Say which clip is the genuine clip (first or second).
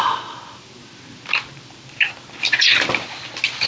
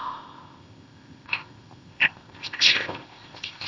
first